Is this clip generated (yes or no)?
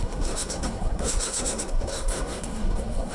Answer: yes